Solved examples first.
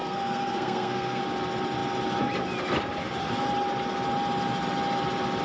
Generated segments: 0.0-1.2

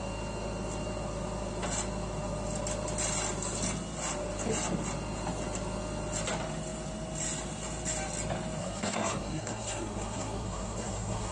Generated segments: 8.6-11.3

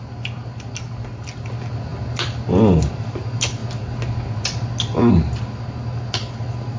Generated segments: none

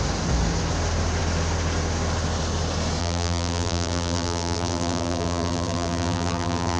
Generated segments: 3.0-6.8

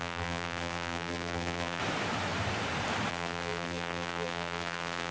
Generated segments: 0.0-1.8; 3.1-5.1

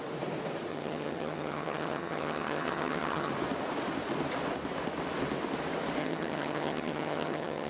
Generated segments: 0.7-3.3; 6.0-7.7